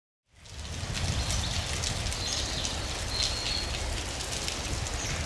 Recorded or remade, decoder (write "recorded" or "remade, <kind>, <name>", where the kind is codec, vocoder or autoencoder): recorded